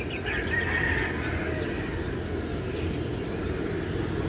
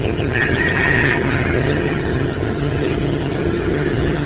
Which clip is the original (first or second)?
first